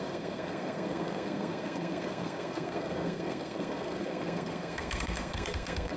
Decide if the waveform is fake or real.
fake